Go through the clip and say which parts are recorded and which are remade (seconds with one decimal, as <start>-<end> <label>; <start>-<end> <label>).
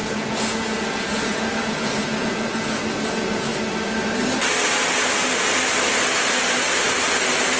0.0-3.5 remade; 3.5-7.6 recorded